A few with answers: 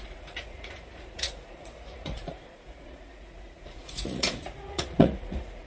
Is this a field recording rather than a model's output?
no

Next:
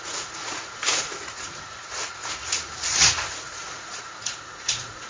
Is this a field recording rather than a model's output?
no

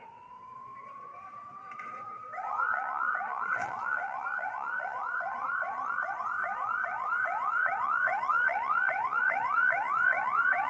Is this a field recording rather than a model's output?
no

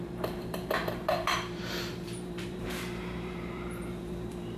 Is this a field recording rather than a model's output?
no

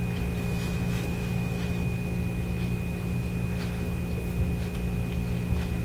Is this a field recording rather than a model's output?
no